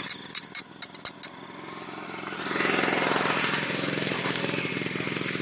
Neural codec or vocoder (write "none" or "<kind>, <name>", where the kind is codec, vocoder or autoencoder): none